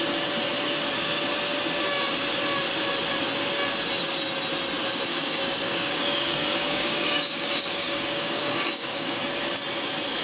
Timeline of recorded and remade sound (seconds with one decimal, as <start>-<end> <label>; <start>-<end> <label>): 0.0-5.1 recorded; 5.1-9.3 remade; 9.3-10.2 recorded